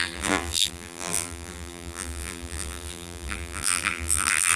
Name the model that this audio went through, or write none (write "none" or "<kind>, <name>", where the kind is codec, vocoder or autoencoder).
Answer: vocoder, BigVGAN v2